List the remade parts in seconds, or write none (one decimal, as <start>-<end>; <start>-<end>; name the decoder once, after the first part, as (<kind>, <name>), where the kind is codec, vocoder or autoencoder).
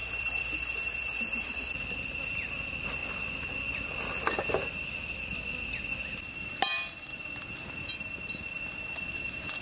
0.0-2.1 (vocoder, BigVGAN v2); 4.8-6.5; 7.1-7.9